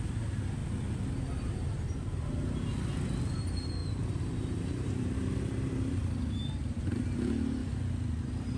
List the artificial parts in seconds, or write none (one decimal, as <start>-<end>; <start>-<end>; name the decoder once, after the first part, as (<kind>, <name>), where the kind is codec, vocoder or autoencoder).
3.8-7.0 (vocoder, BigVGAN v2)